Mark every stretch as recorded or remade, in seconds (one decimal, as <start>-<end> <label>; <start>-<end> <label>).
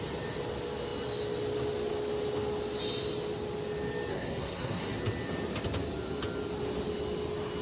0.0-4.1 recorded; 4.1-5.0 remade; 5.0-7.6 recorded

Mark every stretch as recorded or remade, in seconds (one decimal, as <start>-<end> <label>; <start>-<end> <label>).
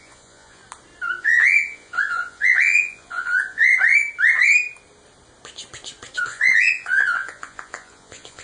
0.0-0.6 remade; 0.6-1.2 recorded; 1.2-3.7 remade; 3.7-6.2 recorded; 6.2-8.4 remade